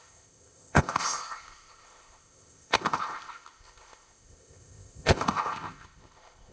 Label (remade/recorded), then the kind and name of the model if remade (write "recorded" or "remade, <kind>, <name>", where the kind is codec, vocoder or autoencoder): remade, codec, ZipCodec